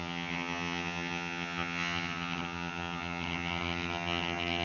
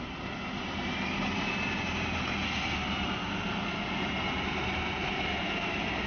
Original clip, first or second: second